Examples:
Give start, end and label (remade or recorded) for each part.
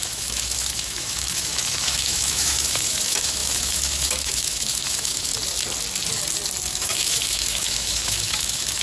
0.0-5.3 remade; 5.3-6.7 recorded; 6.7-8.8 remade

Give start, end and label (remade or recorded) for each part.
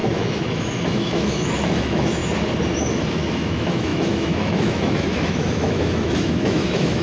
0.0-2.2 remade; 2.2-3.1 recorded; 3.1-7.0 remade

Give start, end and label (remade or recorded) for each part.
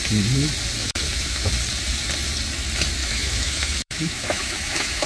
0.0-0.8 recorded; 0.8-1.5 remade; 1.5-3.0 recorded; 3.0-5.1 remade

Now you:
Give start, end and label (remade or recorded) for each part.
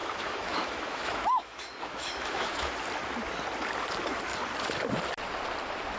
0.0-2.7 remade; 2.7-6.0 recorded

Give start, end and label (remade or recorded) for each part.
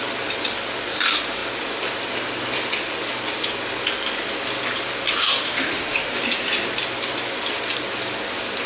0.0-5.2 recorded; 5.2-6.2 remade; 6.2-8.7 recorded